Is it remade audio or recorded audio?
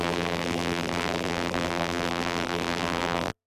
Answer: remade